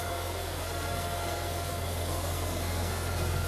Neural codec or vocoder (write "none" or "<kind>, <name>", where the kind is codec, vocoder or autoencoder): codec, SNAC